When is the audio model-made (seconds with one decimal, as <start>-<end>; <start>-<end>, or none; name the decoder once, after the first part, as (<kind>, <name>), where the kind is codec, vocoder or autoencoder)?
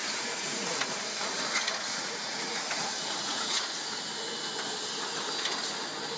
0.0-3.7 (vocoder, Vocos)